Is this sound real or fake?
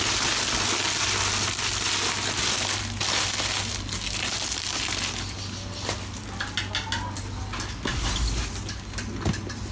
real